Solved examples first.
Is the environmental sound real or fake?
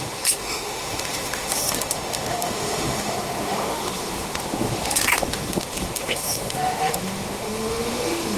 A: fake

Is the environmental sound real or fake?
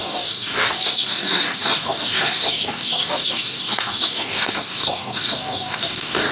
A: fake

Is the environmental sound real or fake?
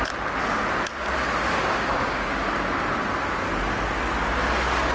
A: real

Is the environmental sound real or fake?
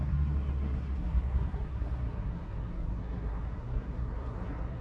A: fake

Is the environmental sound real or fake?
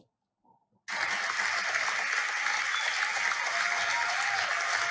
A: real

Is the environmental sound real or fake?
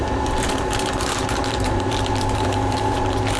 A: fake